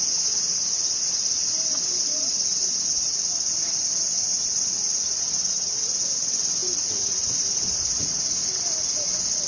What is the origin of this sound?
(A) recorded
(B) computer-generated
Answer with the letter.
B